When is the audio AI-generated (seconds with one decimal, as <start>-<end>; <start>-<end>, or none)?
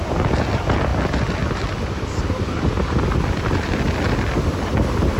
none